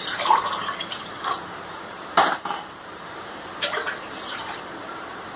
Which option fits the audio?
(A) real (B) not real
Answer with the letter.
B